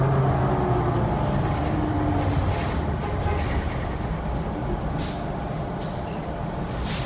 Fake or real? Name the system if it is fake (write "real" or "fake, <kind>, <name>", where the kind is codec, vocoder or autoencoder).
real